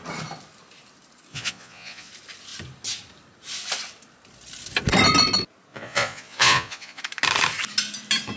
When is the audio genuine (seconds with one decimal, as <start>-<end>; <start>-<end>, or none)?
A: 0.0-1.3; 2.1-5.7; 7.0-8.4